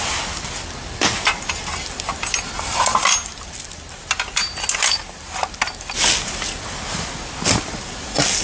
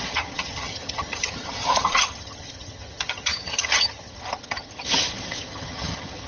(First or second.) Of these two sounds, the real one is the first